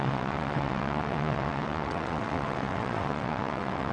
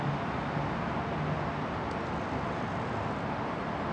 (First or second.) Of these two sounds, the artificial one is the first